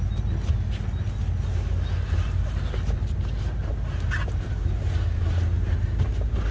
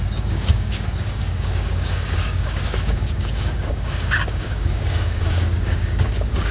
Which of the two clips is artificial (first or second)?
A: second